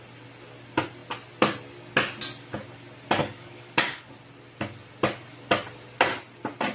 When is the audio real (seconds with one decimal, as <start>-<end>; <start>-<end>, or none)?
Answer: 0.0-3.2; 4.1-6.7